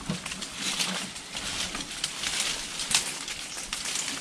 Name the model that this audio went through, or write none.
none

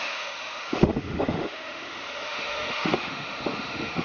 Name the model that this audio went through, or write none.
autoencoder, DAC-VAE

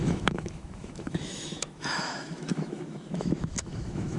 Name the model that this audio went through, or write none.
autoencoder, DAC-VAE